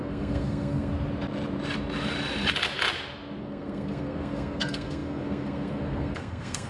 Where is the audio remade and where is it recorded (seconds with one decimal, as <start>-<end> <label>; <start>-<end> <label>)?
0.0-0.9 remade; 0.9-3.4 recorded; 3.4-6.7 remade